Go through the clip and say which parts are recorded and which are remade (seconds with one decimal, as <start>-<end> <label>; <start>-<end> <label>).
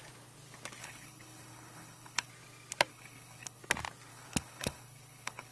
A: 0.0-0.8 recorded; 0.8-2.3 remade; 2.3-2.9 recorded; 2.9-3.6 remade; 3.6-4.1 recorded; 4.1-5.5 remade